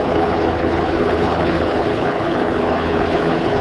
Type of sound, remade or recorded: remade